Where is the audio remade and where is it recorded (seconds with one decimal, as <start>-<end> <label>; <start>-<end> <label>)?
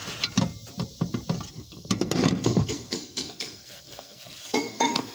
0.0-1.5 recorded; 1.5-5.1 remade